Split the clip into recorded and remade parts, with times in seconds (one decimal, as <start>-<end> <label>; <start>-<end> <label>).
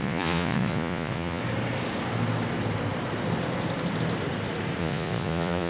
0.0-1.4 remade; 1.4-4.8 recorded; 4.8-5.7 remade